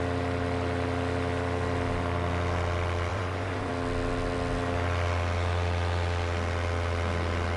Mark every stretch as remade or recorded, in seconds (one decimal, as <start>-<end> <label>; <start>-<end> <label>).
0.0-3.1 recorded; 3.1-3.7 remade; 3.7-7.6 recorded